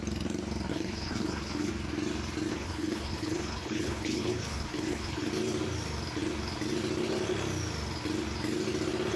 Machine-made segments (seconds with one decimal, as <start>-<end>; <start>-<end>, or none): 0.7-1.7; 2.5-5.3